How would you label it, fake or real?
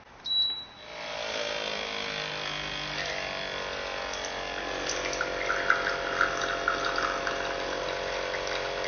real